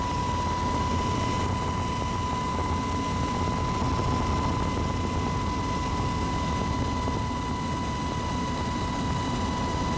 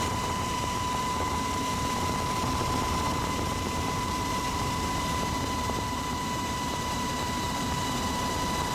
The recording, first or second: first